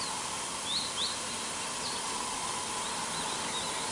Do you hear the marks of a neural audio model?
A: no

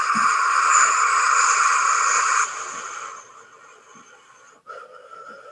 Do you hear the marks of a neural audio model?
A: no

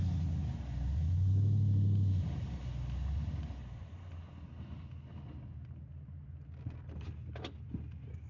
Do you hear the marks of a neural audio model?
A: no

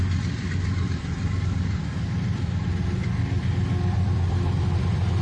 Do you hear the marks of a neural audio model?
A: yes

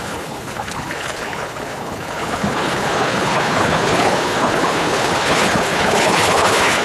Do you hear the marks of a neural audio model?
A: yes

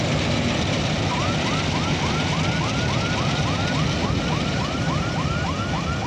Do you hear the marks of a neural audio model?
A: no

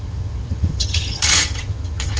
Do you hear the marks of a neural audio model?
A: yes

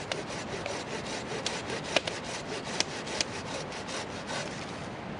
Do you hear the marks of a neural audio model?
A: no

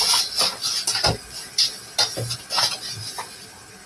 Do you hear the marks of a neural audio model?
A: no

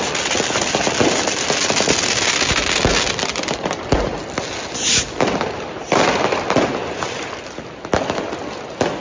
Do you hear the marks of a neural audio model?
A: no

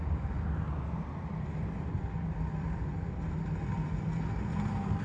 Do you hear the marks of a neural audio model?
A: no